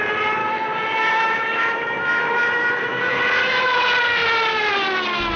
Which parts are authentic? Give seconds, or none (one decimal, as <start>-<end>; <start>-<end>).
0.0-0.4; 3.0-5.4